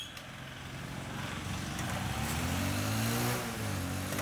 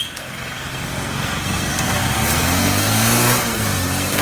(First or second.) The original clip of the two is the first